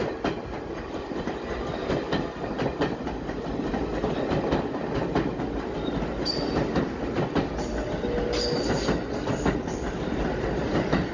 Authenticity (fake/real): real